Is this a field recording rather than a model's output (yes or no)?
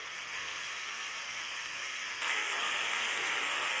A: no